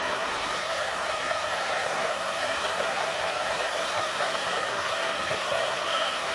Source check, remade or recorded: remade